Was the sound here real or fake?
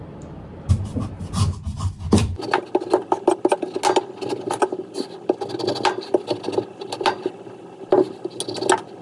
real